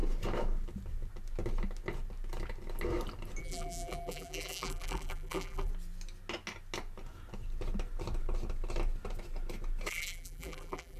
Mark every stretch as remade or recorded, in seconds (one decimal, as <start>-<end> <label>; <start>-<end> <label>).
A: 0.0-3.4 recorded; 3.4-5.7 remade; 5.7-9.9 recorded; 9.9-11.0 remade